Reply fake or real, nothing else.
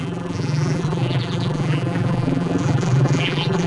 fake